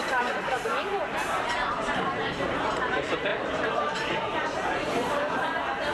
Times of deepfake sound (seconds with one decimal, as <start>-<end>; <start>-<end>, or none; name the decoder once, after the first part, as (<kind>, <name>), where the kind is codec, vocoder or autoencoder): 0.0-5.9 (vocoder, BigVGAN v2)

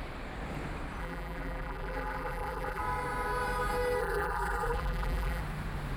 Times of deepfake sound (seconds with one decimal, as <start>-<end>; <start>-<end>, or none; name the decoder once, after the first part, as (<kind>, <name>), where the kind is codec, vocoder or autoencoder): 1.0-2.8 (vocoder, BigVGAN v2); 4.0-5.4

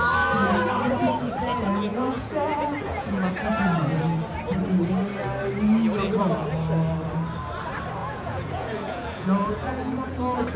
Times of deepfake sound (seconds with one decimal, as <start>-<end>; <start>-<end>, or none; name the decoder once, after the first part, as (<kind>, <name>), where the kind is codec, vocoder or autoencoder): 1.9-3.3 (vocoder, Vocos); 8.0-10.6

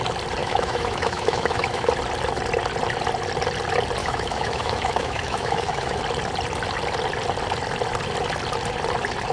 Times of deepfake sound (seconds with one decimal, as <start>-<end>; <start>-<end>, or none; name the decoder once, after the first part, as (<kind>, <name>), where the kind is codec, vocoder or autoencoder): 0.4-1.9 (autoencoder, DAC-VAE); 4.0-6.0

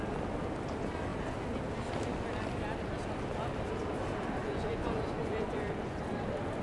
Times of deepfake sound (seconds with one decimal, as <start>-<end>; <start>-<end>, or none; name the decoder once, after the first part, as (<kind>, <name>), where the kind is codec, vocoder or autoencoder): 4.4-6.0 (vocoder, Vocos)

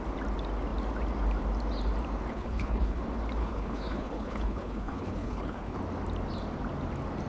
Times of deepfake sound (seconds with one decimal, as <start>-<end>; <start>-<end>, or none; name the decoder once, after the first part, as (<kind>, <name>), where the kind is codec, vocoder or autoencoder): 2.3-3.0 (codec, HILCodec); 3.4-5.8

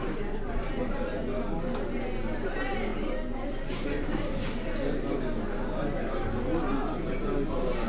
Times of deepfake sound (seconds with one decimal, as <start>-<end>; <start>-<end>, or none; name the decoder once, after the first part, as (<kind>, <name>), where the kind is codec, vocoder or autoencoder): none

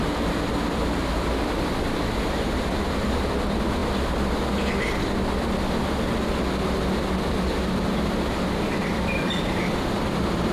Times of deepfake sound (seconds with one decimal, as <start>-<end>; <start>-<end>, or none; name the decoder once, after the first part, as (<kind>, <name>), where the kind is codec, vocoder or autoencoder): 0.0-3.8 (vocoder, BigVGAN v2); 6.0-10.5